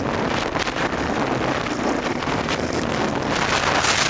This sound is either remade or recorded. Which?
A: recorded